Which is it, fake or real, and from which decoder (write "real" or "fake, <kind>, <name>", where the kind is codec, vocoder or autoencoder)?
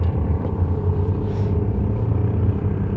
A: real